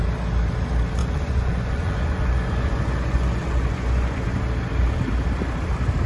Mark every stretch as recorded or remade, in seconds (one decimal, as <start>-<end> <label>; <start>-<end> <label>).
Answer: 0.0-1.0 recorded; 1.0-4.4 remade; 4.4-6.1 recorded